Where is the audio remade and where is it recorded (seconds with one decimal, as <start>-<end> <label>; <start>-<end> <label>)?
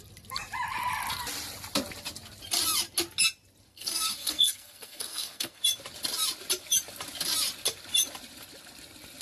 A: 0.0-3.7 recorded; 3.7-5.6 remade; 5.6-9.2 recorded